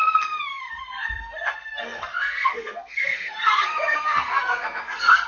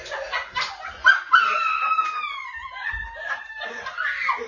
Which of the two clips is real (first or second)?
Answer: second